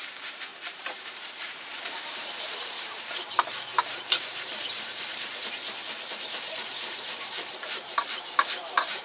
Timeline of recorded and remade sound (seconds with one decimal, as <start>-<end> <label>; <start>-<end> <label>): 0.0-9.0 remade

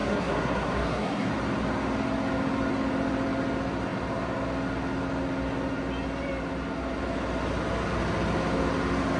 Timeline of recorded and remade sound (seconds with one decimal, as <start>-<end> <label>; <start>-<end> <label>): 0.0-1.3 remade; 1.3-9.2 recorded

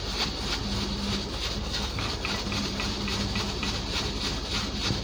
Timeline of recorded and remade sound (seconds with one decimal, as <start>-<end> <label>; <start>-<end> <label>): 0.0-1.6 recorded; 1.6-2.1 remade; 2.1-5.0 recorded

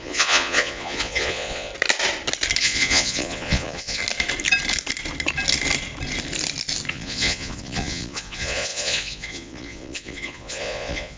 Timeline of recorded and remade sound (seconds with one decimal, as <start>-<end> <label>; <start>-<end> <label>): 0.0-1.7 remade; 1.7-2.6 recorded; 2.6-4.0 remade; 4.0-6.9 recorded; 6.9-11.2 remade

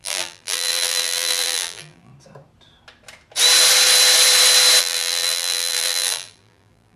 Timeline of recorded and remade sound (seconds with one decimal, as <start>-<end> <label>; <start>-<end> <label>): 0.0-2.1 remade; 2.1-4.8 recorded; 4.8-7.0 remade

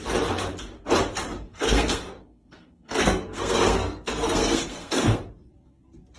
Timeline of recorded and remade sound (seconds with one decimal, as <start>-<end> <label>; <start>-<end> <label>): 0.0-1.5 recorded; 1.5-5.2 remade; 5.2-6.2 recorded

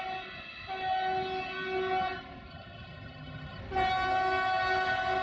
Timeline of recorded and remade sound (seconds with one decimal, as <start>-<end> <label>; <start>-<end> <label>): 0.0-2.5 recorded; 2.5-3.6 remade; 3.6-5.2 recorded